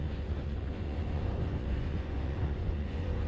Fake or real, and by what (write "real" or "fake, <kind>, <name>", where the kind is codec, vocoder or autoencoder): fake, vocoder, Vocos